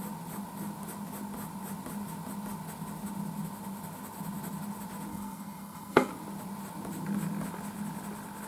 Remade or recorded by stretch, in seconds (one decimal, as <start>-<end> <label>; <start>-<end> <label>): 0.0-5.1 recorded; 5.1-6.1 remade; 6.1-8.5 recorded